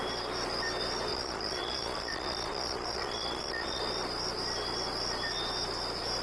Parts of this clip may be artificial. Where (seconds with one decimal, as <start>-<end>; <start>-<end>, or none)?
1.1-3.8